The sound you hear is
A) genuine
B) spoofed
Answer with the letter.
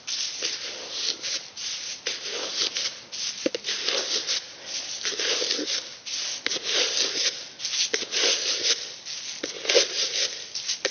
A